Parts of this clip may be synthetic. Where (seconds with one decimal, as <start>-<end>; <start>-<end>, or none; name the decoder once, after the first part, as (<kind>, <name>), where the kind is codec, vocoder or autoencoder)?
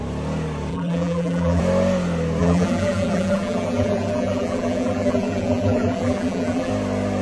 0.7-1.6 (vocoder, BigVGAN v2); 2.4-6.7